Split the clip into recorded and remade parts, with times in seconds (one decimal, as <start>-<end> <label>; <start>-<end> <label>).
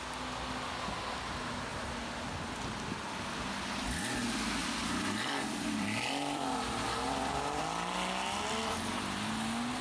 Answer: 0.0-4.6 recorded; 4.6-7.6 remade; 7.6-9.8 recorded